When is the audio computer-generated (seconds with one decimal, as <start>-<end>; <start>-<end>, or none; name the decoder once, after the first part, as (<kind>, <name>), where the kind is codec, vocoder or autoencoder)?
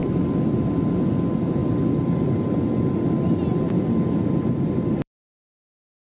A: none